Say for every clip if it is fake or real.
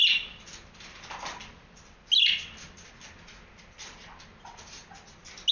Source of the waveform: real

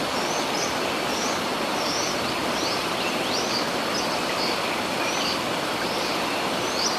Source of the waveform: real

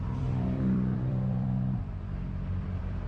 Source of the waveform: fake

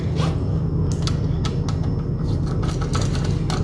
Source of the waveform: real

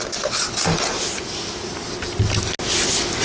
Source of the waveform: real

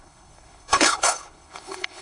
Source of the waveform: fake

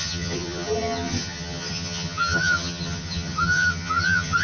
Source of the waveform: fake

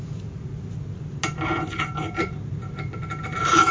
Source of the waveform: real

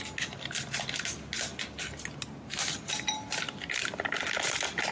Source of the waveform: real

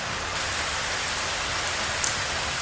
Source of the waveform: fake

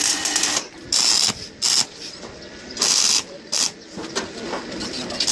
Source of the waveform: real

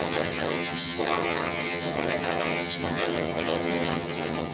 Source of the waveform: fake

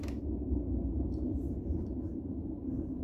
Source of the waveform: fake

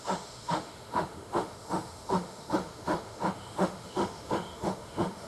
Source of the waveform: fake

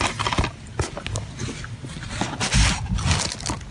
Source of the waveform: real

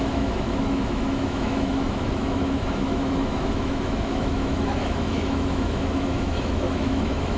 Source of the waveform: fake